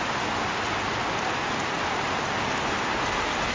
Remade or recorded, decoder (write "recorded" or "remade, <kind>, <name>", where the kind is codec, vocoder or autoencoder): recorded